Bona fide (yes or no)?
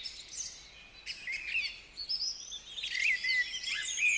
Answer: yes